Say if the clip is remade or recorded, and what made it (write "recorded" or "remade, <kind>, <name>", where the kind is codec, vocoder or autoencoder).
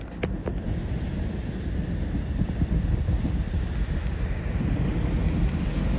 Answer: recorded